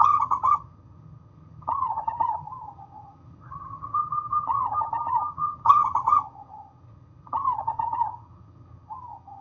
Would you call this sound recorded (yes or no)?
no